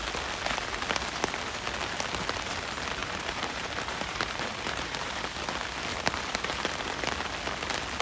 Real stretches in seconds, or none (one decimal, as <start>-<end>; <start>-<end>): 0.0-3.0; 5.2-5.9; 6.7-8.0